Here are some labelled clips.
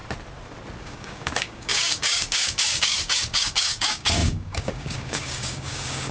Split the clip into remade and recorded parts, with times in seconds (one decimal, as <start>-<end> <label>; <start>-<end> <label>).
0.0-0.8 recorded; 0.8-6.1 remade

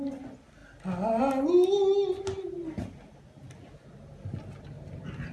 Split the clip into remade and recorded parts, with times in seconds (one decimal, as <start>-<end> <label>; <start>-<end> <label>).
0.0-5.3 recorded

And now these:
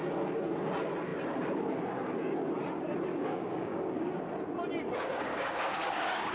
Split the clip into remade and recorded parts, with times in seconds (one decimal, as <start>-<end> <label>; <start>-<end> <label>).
0.0-3.1 recorded; 3.1-4.1 remade; 4.1-5.1 recorded; 5.1-6.3 remade